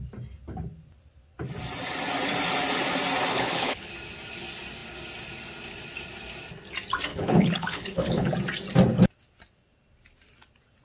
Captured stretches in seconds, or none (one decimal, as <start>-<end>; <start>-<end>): 0.0-3.3; 3.9-7.1; 8.3-10.8